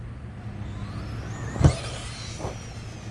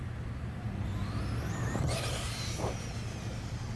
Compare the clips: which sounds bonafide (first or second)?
first